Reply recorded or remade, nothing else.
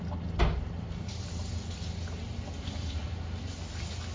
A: recorded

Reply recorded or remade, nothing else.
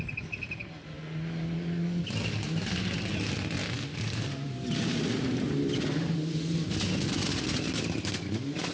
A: recorded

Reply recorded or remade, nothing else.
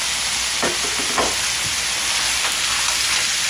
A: recorded